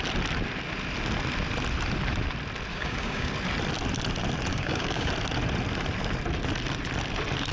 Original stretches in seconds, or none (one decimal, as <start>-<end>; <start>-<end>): 0.0-2.7; 3.3-4.5; 5.1-7.5